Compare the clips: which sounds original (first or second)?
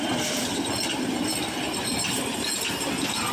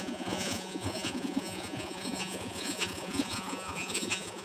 first